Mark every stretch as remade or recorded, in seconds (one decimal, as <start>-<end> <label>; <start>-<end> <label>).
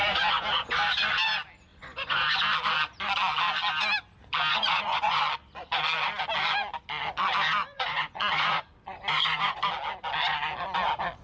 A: 0.0-1.2 remade; 1.2-1.7 recorded; 1.7-2.4 remade; 2.4-4.5 recorded; 4.5-5.2 remade; 5.2-7.6 recorded; 7.6-9.7 remade; 9.7-11.2 recorded